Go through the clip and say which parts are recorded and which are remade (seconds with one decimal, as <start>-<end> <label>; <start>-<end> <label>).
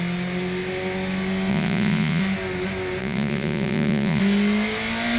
0.0-1.5 recorded; 1.5-2.2 remade; 2.2-3.0 recorded; 3.0-4.2 remade; 4.2-5.2 recorded